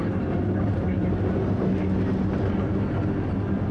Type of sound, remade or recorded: recorded